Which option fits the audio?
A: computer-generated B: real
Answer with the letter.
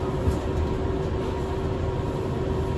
B